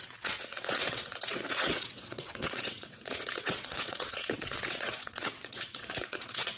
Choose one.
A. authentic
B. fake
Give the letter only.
B